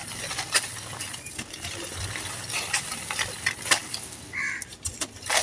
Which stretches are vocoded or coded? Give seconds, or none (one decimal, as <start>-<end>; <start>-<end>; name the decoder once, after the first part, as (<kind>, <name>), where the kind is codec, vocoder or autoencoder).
none